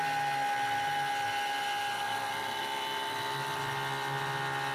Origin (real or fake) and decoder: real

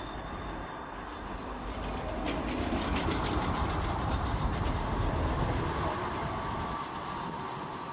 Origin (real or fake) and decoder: real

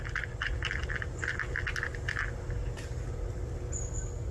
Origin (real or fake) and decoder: real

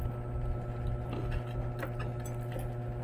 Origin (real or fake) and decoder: real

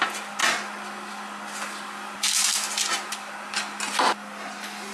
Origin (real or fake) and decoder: real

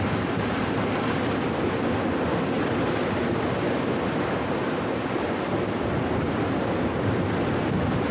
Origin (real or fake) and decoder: real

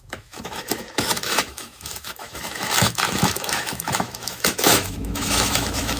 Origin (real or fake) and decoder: fake, autoencoder, DAC-VAE